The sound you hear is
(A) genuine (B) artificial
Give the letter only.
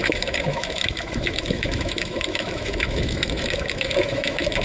B